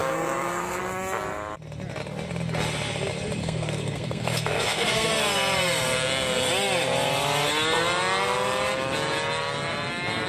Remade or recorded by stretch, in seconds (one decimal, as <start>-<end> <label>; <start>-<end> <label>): 0.0-0.8 remade; 0.8-3.4 recorded; 3.4-5.1 remade; 5.1-10.3 recorded